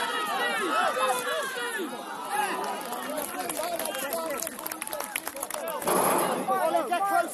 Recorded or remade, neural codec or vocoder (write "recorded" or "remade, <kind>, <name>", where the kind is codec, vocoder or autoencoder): recorded